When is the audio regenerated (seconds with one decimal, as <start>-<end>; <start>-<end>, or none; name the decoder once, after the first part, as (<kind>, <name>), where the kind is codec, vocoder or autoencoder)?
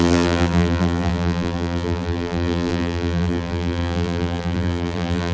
0.0-5.3 (vocoder, BigVGAN v2)